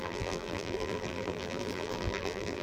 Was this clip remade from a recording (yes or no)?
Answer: yes